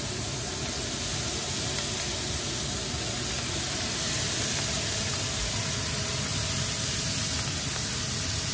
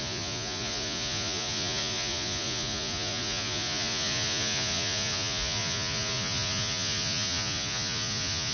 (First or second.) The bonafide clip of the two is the first